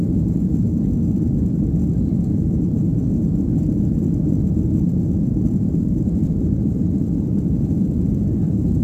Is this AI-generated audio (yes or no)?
yes